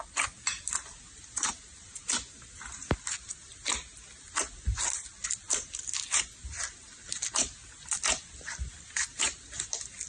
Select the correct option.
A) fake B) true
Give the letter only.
B